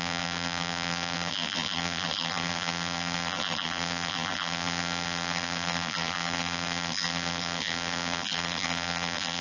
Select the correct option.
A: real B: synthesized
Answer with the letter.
B